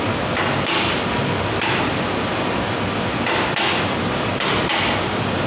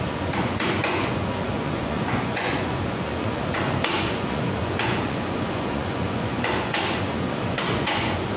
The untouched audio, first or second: first